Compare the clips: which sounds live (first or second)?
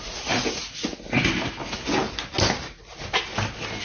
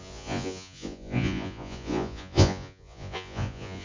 first